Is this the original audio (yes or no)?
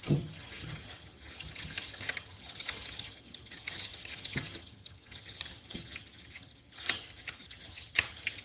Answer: no